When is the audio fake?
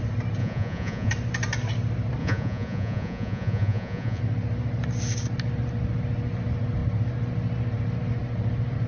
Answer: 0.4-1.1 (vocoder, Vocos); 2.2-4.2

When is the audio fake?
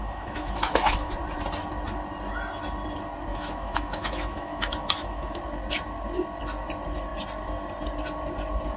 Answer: 0.0-1.1 (autoencoder, DAC-VAE); 3.3-5.4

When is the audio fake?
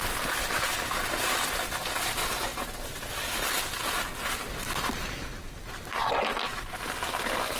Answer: none